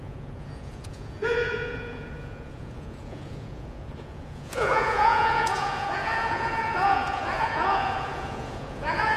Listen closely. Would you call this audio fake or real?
fake